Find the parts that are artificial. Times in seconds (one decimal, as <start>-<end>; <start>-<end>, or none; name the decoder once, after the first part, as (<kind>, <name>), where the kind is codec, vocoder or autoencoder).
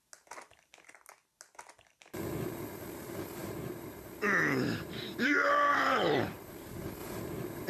3.4-6.4 (vocoder, BigVGAN v2); 7.0-7.7